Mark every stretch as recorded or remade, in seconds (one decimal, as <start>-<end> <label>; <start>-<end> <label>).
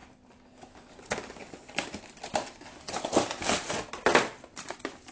0.0-5.1 recorded